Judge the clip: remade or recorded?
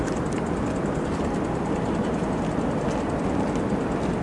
recorded